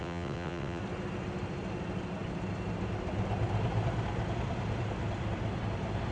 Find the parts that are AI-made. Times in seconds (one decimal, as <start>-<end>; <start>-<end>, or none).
0.0-0.8